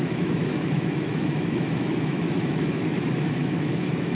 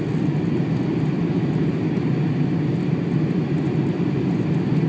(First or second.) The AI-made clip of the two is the first